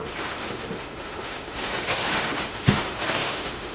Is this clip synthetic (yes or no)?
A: yes